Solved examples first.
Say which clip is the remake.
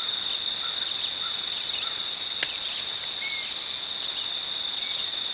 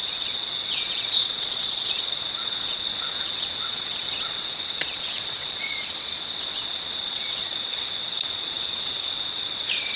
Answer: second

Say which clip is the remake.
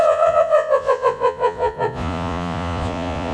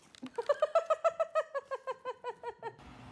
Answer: first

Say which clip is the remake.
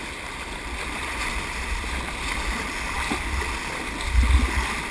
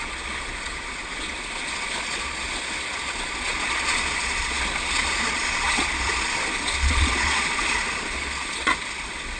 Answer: second